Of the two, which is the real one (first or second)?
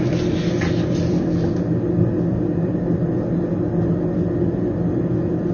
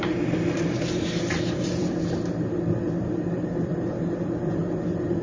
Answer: first